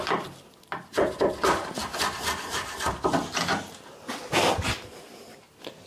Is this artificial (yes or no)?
no